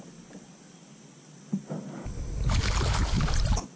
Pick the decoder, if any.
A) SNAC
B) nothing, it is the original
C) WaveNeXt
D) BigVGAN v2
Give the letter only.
B